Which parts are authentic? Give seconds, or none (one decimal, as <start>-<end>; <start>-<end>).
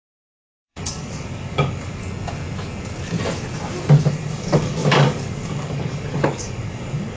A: 2.0-4.1